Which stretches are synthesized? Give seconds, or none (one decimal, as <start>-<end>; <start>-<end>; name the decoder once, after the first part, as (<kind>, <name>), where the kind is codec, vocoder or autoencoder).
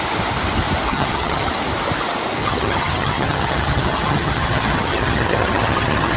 0.9-1.5 (vocoder, HiFi-GAN); 2.4-6.2